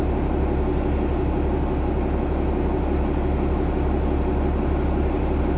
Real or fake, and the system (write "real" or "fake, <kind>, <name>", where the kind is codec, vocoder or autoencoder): real